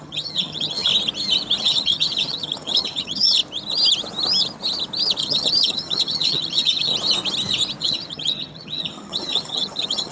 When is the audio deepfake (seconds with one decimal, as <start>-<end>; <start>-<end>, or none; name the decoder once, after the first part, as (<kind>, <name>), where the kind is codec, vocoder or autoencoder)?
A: 0.0-0.9 (vocoder, HiFi-GAN); 1.6-3.4; 5.2-6.9; 7.8-10.1